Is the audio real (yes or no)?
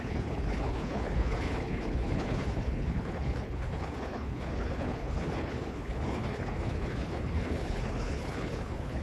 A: no